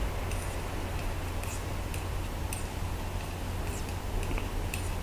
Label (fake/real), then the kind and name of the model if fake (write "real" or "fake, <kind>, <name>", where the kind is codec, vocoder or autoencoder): real